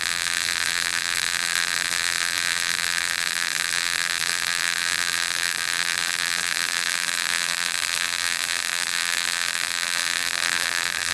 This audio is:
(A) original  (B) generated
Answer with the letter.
B